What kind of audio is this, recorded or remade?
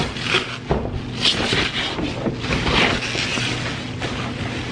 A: recorded